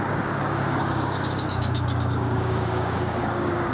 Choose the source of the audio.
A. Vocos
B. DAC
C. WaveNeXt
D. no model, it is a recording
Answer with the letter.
B